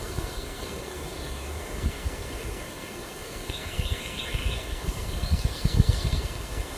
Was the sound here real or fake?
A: fake